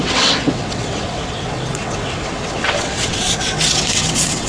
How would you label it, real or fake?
fake